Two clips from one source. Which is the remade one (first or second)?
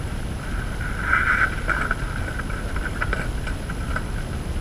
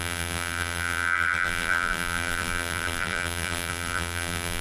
second